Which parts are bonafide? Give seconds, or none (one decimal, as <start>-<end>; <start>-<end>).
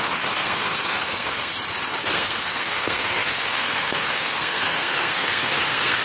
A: 1.5-2.0